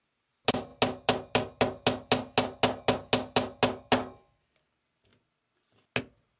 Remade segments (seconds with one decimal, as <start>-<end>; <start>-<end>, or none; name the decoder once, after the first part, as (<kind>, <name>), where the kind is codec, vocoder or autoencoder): none

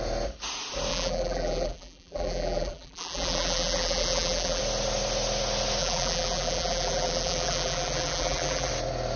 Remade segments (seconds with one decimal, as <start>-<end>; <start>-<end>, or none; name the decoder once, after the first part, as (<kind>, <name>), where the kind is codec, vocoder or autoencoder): 0.9-4.6 (vocoder, BigVGAN v2); 5.8-8.7

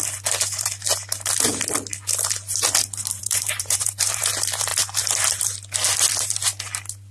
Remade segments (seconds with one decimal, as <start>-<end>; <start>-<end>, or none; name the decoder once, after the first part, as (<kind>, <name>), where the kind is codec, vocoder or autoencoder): 3.2-4.2 (vocoder, BigVGAN v2)

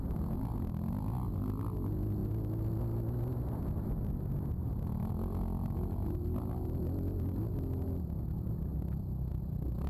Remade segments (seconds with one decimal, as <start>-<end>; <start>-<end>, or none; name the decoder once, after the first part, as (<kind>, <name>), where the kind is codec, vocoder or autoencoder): none

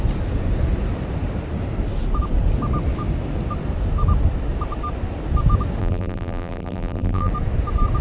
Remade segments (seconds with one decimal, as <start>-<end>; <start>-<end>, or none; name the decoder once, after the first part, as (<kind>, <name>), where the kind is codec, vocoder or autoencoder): 5.8-7.3 (vocoder, BigVGAN v2)

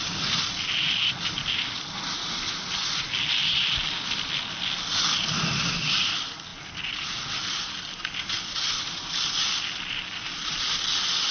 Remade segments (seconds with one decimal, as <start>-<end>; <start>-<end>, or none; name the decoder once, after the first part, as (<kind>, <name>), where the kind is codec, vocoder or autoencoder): none

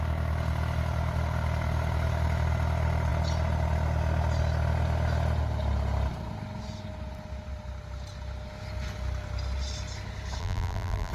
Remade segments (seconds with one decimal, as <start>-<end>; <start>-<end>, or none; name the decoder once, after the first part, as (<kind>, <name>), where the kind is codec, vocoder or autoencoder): 10.4-11.1 (vocoder, BigVGAN v2)